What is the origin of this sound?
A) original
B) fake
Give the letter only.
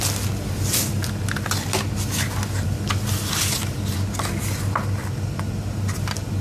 A